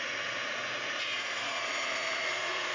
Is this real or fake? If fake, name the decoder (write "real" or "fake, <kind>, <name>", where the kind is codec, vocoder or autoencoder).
fake, vocoder, Vocos